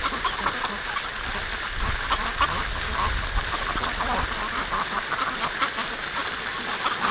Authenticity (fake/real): real